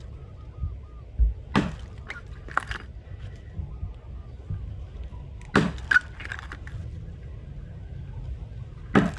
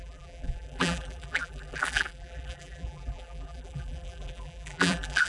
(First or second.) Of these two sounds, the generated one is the second